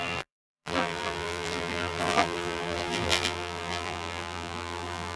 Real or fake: fake